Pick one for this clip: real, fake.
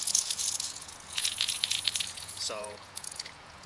fake